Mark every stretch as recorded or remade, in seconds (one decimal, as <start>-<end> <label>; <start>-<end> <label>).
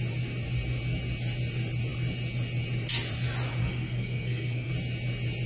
0.0-3.6 recorded; 3.6-4.7 remade; 4.7-5.5 recorded